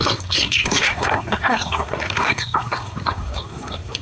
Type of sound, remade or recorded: remade